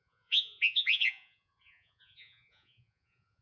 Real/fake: fake